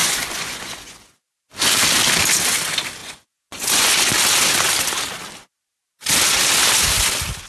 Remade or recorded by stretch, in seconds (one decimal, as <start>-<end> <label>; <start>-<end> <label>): 0.0-1.2 remade; 1.2-3.0 recorded; 3.0-3.9 remade; 3.9-7.5 recorded